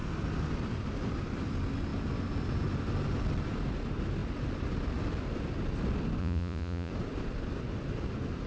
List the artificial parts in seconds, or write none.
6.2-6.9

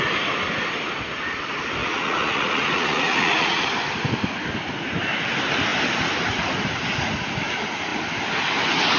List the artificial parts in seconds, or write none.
1.8-3.7

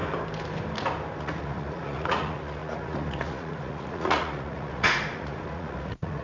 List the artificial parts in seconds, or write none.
1.2-6.2

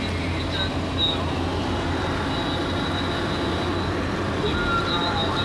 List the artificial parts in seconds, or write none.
none

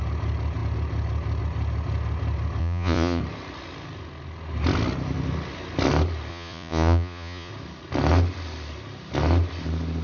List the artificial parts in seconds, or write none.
2.6-3.2; 6.3-7.5

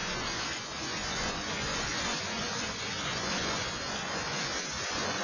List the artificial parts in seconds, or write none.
0.0-5.2

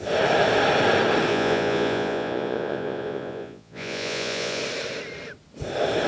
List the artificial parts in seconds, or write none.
1.3-4.6